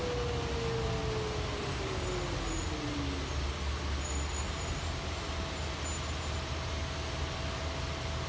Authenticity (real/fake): real